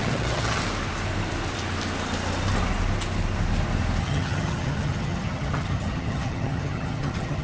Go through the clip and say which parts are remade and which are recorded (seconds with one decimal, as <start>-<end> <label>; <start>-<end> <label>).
0.0-0.6 remade; 0.6-4.0 recorded; 4.0-7.4 remade